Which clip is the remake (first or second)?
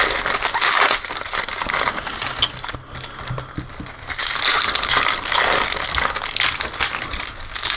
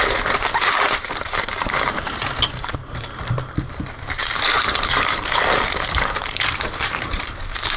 second